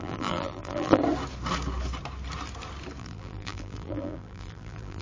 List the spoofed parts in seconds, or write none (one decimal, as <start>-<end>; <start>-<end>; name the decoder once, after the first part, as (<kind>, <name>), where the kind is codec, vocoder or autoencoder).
0.0-1.0 (vocoder, BigVGAN v2); 3.0-5.0